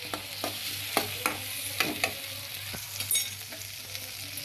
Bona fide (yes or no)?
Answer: yes